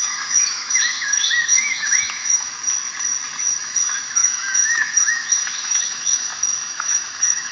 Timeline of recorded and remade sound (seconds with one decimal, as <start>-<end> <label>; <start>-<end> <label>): 0.0-2.6 remade; 2.6-3.6 recorded; 3.6-7.5 remade